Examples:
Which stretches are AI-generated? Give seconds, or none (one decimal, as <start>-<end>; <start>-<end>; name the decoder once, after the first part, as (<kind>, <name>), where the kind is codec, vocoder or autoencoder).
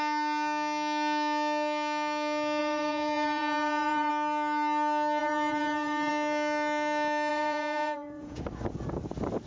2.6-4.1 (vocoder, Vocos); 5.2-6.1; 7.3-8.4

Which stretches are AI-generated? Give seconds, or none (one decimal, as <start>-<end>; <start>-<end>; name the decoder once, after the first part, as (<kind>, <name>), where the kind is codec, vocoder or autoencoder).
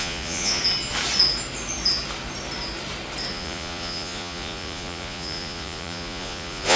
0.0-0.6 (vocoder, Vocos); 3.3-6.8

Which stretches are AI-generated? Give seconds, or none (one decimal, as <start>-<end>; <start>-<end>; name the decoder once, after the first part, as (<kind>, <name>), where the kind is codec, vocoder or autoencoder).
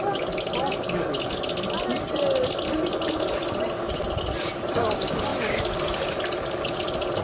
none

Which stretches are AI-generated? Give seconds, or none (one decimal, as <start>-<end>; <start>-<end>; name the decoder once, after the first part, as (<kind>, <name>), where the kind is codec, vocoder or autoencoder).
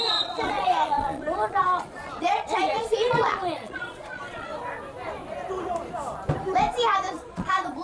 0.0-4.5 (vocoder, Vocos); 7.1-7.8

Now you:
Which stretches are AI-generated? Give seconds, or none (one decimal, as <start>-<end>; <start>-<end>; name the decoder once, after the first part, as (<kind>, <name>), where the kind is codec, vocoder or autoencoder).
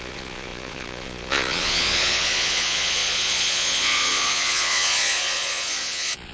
0.0-6.3 (vocoder, Vocos)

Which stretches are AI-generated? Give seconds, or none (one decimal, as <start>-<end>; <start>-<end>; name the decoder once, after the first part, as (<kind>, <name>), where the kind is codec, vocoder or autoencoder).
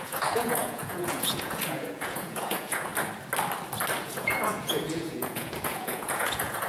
0.0-2.9 (vocoder, Vocos); 4.0-6.7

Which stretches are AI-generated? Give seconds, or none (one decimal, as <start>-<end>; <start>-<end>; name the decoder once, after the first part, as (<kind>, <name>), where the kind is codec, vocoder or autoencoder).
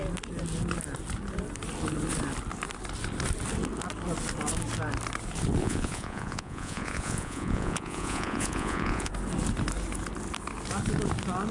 5.6-9.1 (vocoder, Vocos)